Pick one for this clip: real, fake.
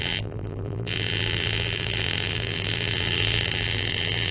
fake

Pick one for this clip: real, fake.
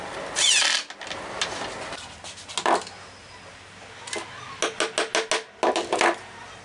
real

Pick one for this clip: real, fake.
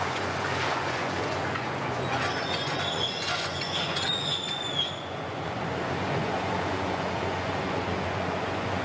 fake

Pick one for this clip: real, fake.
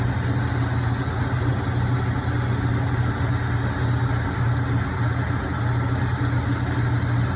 real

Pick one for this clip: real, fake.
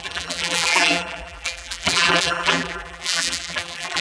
fake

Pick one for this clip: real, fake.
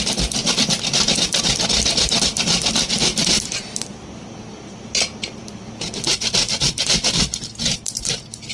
real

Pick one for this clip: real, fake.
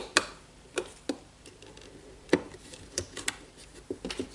real